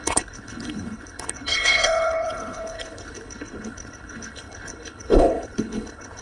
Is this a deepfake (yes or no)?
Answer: yes